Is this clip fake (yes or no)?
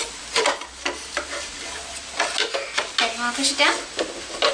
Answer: no